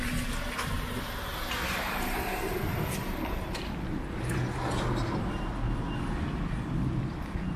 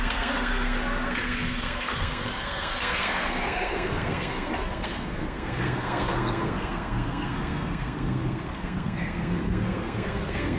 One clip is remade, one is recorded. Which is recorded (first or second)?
first